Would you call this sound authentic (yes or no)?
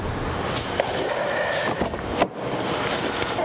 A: yes